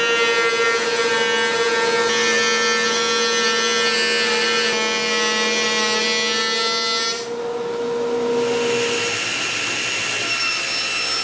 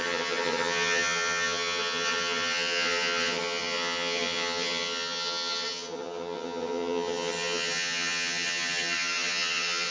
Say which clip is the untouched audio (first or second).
first